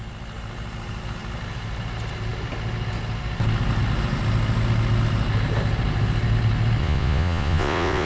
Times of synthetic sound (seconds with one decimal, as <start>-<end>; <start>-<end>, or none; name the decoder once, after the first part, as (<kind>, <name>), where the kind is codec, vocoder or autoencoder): 6.8-8.1 (vocoder, Vocos)